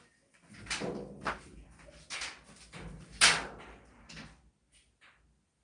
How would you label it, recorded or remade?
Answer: recorded